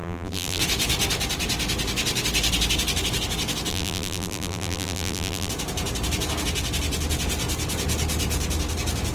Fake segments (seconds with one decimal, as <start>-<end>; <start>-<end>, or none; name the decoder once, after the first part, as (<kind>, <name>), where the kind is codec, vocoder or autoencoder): 0.0-0.6 (vocoder, BigVGAN v2); 3.7-5.5